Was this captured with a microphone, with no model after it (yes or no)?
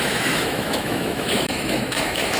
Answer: no